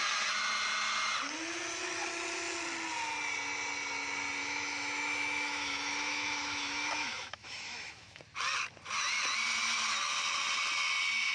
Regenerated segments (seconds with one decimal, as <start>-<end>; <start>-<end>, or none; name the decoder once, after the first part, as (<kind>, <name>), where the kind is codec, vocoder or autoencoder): 4.4-8.2 (autoencoder, DAC-VAE)